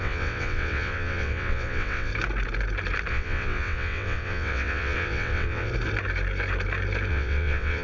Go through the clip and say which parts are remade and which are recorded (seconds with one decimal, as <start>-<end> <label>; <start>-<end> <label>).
0.0-2.1 remade; 2.1-3.1 recorded; 3.1-5.7 remade; 5.7-7.1 recorded; 7.1-7.8 remade